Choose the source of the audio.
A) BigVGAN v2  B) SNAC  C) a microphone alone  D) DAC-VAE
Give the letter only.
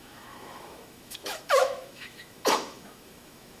D